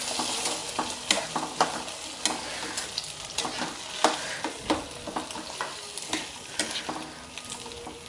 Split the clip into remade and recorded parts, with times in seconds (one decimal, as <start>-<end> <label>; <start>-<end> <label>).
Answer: 0.0-8.1 recorded